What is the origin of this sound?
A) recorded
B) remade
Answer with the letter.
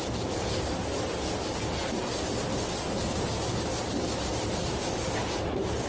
A